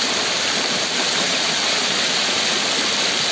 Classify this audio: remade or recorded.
recorded